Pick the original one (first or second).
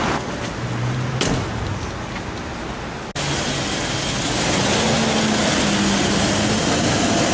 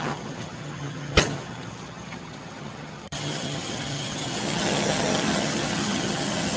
first